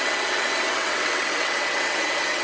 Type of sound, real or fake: fake